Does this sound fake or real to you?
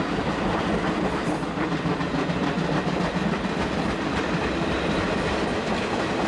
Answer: real